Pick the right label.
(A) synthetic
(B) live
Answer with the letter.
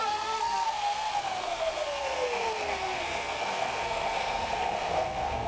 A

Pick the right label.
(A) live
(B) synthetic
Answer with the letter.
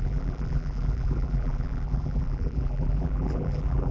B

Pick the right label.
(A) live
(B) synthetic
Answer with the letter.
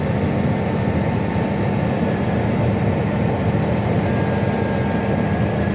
A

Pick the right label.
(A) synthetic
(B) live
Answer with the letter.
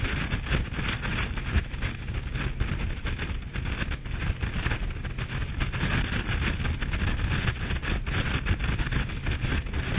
B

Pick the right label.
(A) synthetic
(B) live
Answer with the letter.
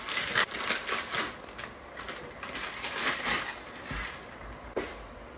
B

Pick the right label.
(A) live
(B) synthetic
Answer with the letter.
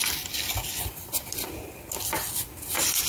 A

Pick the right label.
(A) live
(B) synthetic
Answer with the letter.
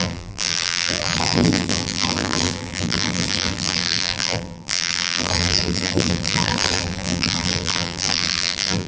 B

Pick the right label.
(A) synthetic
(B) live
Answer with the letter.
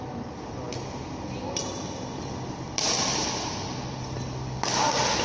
B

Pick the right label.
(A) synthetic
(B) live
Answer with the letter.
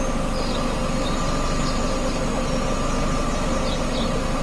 B